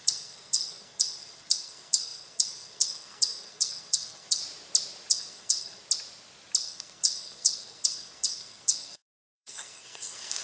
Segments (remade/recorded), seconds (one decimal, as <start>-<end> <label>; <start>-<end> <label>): 0.0-4.4 remade; 4.4-5.1 recorded; 5.1-5.8 remade; 5.8-6.6 recorded; 6.6-10.4 remade